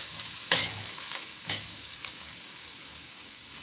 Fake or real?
fake